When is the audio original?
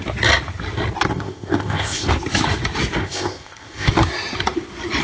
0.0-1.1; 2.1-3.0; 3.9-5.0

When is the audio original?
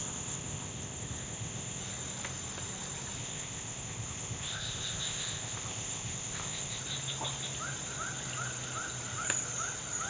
1.8-3.2; 6.8-10.1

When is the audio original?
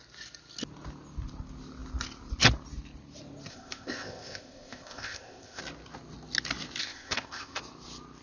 0.0-3.5; 5.6-6.8; 7.6-8.2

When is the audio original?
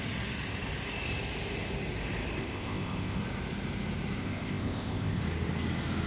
0.0-2.4; 3.2-4.2; 5.2-6.1